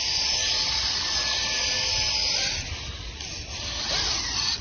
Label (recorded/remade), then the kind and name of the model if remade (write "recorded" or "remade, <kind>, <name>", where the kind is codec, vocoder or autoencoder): recorded